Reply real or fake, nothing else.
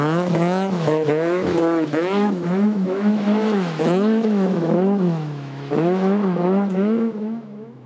fake